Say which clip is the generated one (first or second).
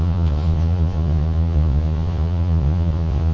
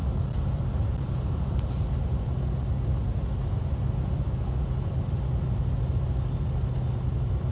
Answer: first